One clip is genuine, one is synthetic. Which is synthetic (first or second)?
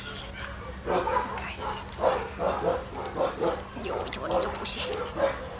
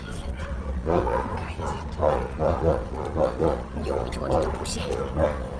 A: second